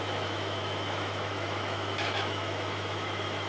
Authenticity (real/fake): fake